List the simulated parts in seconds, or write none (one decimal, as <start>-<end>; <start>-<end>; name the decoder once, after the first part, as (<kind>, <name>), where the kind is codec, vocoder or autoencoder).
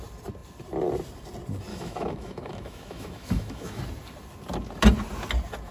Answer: 1.7-3.8 (autoencoder, DAC-VAE)